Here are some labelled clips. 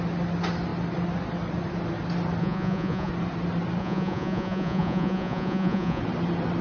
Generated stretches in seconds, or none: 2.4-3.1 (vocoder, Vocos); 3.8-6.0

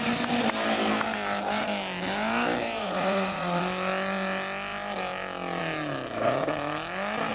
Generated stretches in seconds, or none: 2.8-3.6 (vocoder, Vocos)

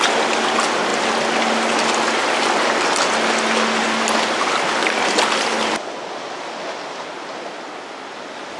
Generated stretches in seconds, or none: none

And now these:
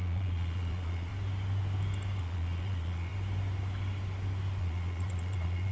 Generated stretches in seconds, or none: 0.0-1.1 (vocoder, Vocos); 2.2-3.1; 4.6-5.7

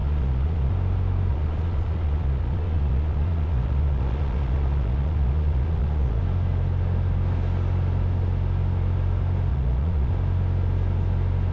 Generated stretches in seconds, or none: 0.0-0.7 (vocoder, Vocos); 1.3-6.2; 9.5-10.1

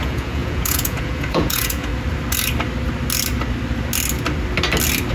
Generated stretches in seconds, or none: 0.0-1.9 (vocoder, Vocos)

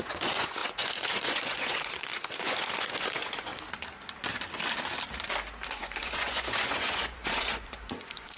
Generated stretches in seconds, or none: 0.0-3.5 (vocoder, Vocos); 5.7-8.4

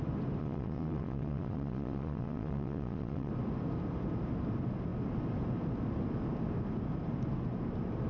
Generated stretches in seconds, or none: 0.4-3.3 (vocoder, Vocos)